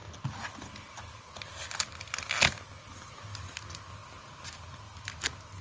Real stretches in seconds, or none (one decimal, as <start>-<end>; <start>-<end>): 0.0-5.6